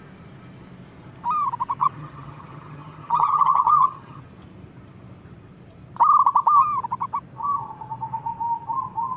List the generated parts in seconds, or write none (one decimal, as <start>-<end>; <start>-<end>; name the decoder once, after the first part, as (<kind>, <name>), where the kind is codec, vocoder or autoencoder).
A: 1.8-4.2 (vocoder, HiFi-GAN)